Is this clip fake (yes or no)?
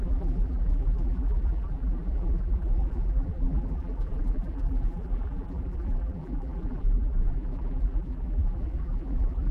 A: yes